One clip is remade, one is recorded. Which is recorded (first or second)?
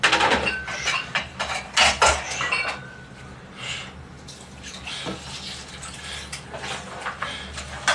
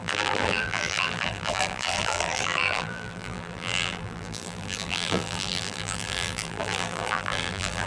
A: first